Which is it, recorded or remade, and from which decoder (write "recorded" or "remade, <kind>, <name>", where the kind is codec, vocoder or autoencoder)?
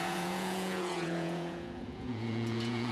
remade, vocoder, Vocos